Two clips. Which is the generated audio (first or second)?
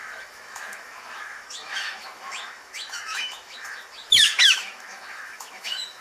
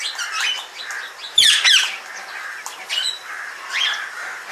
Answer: first